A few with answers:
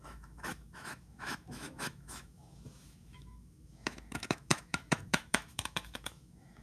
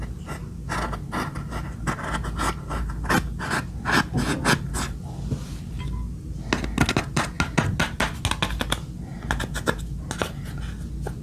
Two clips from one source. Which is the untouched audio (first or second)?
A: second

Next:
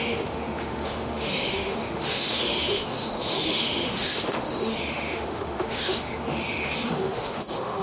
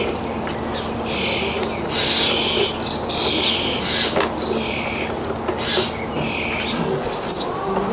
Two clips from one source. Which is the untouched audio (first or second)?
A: second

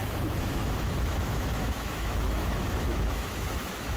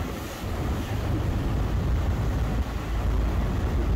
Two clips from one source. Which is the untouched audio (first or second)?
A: second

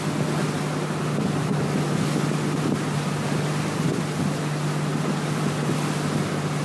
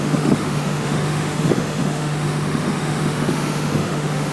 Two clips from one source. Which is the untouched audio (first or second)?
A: first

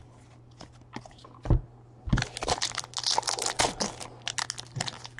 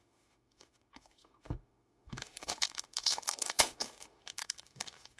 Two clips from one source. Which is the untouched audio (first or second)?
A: first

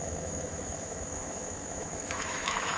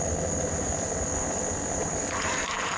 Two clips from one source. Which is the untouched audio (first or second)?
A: second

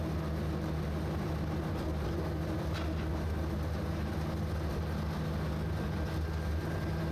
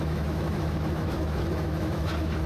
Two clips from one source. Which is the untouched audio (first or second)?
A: first